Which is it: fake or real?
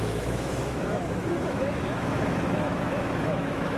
fake